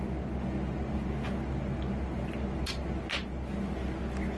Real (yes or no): yes